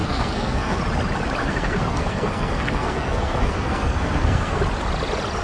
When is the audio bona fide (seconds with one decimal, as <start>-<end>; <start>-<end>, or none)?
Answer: 0.8-1.4; 4.6-5.4